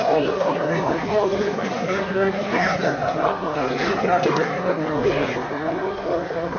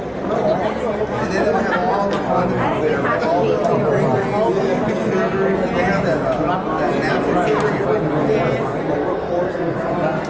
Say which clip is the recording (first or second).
second